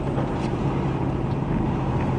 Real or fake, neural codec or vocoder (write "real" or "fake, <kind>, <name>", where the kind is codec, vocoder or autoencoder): real